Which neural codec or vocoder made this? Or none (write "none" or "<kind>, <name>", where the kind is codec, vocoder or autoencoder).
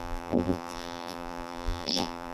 vocoder, BigVGAN v2